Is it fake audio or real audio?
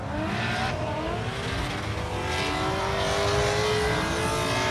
real